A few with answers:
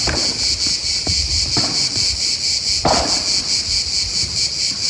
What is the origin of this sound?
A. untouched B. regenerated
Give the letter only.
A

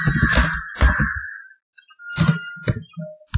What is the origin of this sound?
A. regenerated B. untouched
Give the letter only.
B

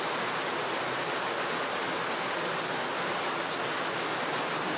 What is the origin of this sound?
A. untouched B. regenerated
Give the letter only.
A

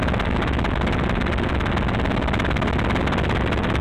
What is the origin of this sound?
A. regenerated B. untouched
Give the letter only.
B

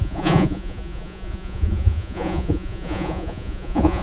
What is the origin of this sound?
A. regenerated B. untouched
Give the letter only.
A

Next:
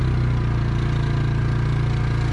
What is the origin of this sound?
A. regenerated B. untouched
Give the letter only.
B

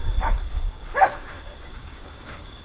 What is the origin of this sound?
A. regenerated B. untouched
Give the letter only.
A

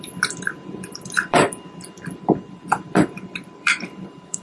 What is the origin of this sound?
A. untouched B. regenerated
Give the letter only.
B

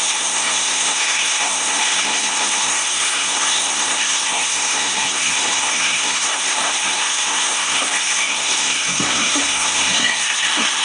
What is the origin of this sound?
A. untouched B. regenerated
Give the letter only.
B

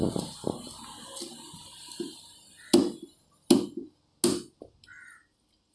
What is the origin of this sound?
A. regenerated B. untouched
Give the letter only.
B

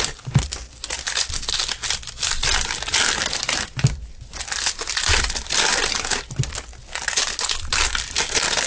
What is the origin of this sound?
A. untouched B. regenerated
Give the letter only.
A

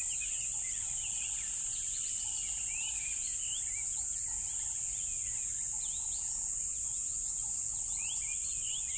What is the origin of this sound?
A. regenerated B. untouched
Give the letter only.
B